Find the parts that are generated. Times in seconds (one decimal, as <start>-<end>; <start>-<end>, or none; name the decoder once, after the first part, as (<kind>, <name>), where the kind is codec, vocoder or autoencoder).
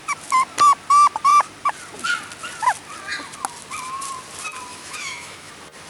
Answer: 4.7-5.5 (autoencoder, DAC-VAE)